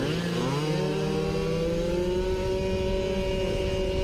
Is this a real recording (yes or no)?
yes